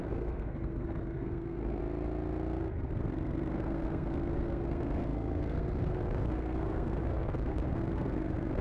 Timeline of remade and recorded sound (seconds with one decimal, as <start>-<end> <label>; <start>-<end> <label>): 0.0-1.8 remade; 1.8-2.6 recorded; 2.6-8.6 remade